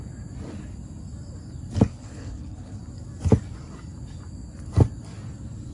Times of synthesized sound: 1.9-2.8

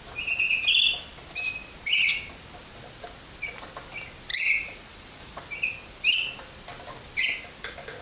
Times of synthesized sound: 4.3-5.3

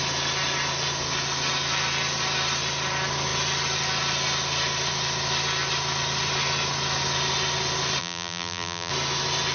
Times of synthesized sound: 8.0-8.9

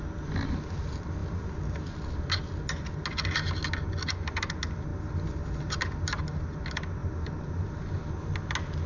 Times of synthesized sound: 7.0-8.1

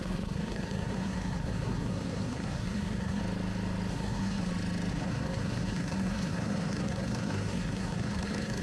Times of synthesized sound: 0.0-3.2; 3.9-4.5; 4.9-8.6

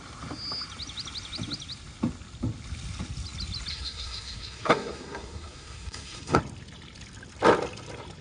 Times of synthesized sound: 3.7-6.4